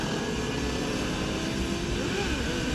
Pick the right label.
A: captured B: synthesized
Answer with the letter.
A